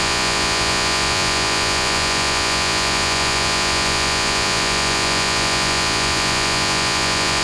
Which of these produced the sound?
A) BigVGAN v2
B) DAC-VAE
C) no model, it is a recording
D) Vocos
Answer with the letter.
D